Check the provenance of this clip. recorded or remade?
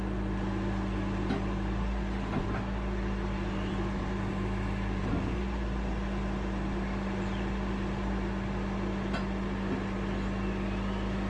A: recorded